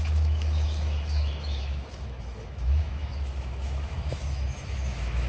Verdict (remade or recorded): remade